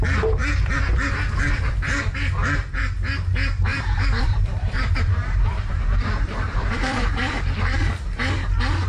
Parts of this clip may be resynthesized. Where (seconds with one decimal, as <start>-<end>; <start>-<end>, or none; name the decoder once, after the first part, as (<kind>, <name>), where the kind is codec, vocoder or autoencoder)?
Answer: 3.7-7.8 (vocoder, BigVGAN v2)